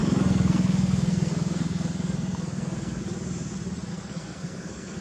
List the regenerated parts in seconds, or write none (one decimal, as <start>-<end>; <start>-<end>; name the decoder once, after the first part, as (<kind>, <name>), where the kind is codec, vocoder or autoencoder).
0.0-3.0 (codec, SNAC); 3.9-5.0